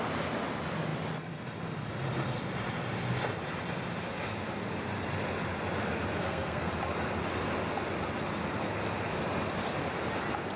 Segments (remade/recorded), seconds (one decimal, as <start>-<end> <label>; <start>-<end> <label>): 0.0-6.2 recorded; 6.2-6.7 remade; 6.7-10.6 recorded